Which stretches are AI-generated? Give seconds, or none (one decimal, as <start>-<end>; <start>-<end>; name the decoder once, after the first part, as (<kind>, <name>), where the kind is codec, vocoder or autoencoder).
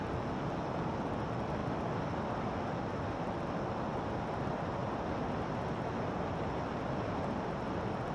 none